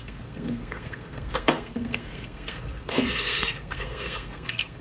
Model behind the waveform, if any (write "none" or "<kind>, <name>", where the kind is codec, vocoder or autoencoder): codec, SNAC